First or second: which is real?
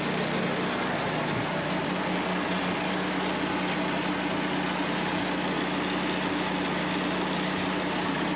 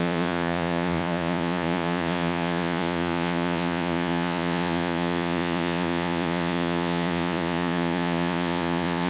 first